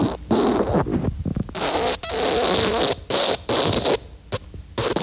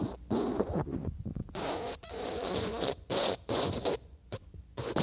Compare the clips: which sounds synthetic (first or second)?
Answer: second